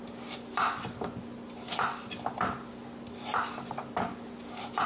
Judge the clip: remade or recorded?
recorded